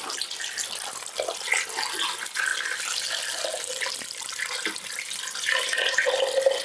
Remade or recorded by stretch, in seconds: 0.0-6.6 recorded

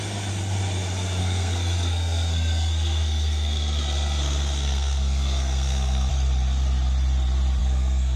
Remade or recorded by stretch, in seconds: 0.0-1.2 recorded; 1.2-6.1 remade; 6.1-7.6 recorded; 7.6-8.2 remade

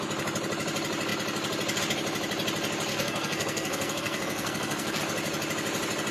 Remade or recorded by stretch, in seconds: 0.0-2.9 recorded; 2.9-5.0 remade; 5.0-6.1 recorded

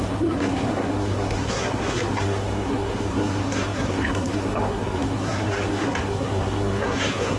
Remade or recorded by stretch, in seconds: 0.0-7.4 remade